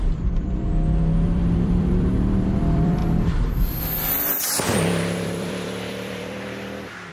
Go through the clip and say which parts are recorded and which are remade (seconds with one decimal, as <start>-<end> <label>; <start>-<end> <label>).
0.0-7.1 remade